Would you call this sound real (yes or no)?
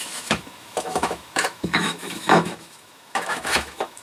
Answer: no